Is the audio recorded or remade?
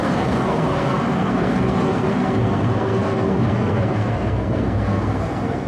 remade